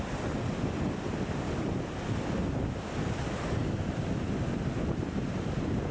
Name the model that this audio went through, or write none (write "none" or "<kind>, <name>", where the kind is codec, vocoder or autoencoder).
none